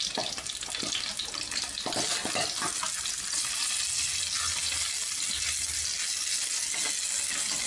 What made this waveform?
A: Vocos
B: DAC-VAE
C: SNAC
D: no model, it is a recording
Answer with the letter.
D